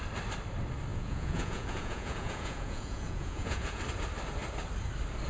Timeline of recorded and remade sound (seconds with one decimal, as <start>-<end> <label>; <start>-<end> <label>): 0.0-0.9 recorded; 0.9-3.8 remade; 3.8-5.3 recorded